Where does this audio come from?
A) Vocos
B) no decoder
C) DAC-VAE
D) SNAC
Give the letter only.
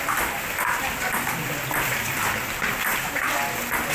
B